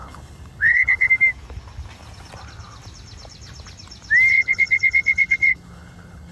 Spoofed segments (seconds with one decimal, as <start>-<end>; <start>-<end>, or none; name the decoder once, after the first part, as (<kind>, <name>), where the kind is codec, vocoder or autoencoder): 0.0-1.1 (codec, HILCodec); 4.3-6.3